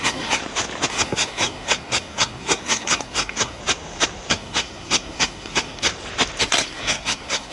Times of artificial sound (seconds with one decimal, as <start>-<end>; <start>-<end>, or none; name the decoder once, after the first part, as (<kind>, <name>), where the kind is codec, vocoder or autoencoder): 0.0-0.4 (codec, SNAC); 0.9-3.6; 4.3-5.9; 6.4-7.5

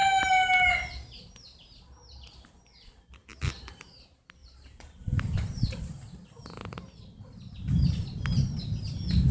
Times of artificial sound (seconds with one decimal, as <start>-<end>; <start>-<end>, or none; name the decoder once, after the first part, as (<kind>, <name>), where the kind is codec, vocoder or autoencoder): 0.0-0.7 (vocoder, BigVGAN v2); 3.2-3.8; 4.4-5.8